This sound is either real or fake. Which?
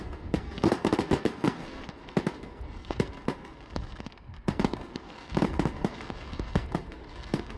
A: fake